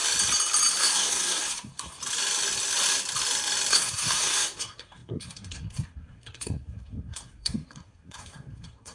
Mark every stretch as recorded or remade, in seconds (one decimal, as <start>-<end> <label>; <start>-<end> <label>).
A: 0.0-0.8 recorded; 0.8-2.0 remade; 2.0-3.7 recorded; 3.7-8.9 remade